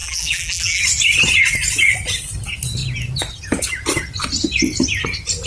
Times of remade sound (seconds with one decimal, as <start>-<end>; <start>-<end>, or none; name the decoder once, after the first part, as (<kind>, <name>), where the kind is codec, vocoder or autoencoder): 0.0-0.8 (vocoder, BigVGAN v2)